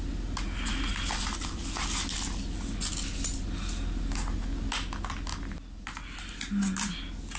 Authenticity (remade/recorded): recorded